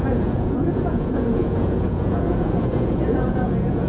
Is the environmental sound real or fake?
fake